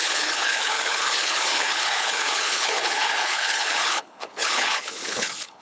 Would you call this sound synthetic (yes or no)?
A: yes